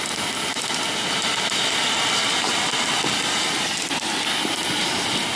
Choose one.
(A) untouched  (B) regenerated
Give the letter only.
A